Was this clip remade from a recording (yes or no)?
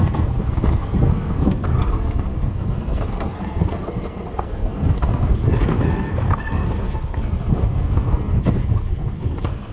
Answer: yes